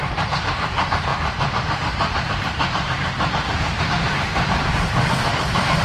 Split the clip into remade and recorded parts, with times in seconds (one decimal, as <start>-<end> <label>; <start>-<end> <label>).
0.0-5.8 remade